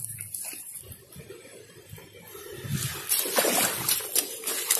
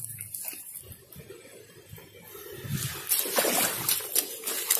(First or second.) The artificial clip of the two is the first